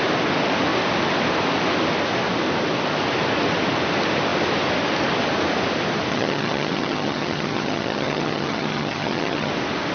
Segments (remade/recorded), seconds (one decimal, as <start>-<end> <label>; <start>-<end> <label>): 0.0-6.1 recorded; 6.1-9.5 remade; 9.5-9.9 recorded